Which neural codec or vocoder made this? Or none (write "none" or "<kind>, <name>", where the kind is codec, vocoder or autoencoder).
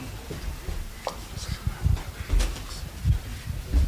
none